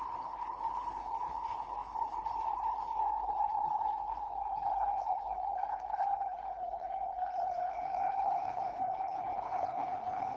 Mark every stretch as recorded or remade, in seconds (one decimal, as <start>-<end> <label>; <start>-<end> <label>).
0.0-10.4 remade